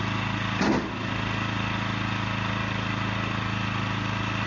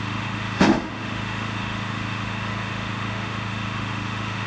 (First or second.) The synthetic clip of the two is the second